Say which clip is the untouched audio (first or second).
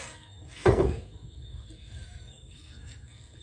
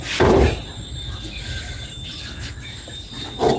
second